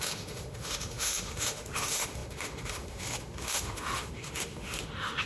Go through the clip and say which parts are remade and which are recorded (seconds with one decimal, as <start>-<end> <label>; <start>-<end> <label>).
0.0-5.3 remade

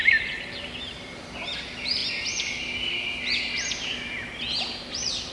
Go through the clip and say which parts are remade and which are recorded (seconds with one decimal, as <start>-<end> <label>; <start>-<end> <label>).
0.0-5.3 recorded

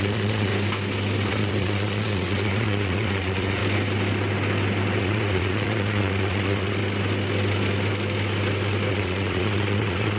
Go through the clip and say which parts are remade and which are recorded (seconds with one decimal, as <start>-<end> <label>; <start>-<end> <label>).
0.0-0.5 remade; 0.5-1.3 recorded; 1.3-3.6 remade; 3.6-5.0 recorded; 5.0-6.8 remade; 6.8-8.9 recorded; 8.9-10.2 remade

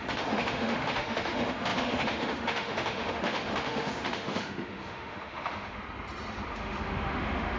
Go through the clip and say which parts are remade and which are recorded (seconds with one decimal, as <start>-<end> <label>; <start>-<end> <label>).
0.0-5.8 remade; 5.8-6.5 recorded; 6.5-7.6 remade